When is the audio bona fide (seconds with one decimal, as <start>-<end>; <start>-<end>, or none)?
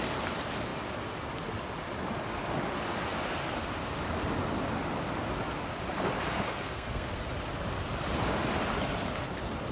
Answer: 0.0-6.3; 7.2-9.7